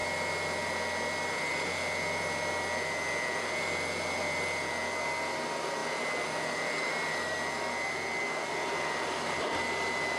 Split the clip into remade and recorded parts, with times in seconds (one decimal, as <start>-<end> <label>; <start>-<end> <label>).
0.0-10.2 recorded